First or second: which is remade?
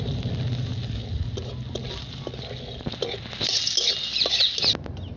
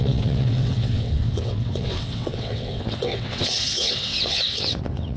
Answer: second